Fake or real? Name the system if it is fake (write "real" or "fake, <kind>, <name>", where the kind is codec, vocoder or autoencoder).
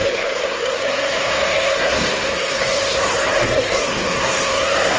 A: fake, codec, SNAC